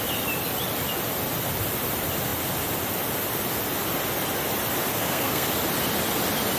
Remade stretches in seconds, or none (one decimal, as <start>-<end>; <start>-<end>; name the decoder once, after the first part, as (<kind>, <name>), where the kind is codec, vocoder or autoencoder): 4.9-5.5 (codec, SNAC)